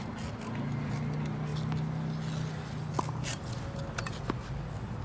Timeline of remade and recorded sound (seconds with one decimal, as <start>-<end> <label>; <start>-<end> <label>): 0.0-5.0 recorded